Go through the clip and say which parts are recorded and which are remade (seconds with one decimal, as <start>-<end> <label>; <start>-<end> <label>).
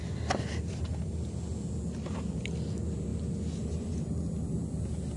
0.0-5.2 recorded